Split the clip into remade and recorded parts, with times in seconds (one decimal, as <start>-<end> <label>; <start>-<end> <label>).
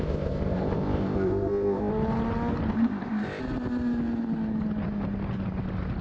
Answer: 0.0-1.9 remade; 1.9-2.7 recorded; 2.7-3.4 remade; 3.4-6.0 recorded